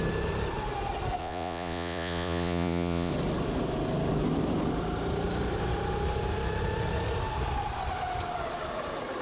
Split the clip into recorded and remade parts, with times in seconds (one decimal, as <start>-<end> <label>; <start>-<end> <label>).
0.0-1.2 recorded; 1.2-3.1 remade; 3.1-9.2 recorded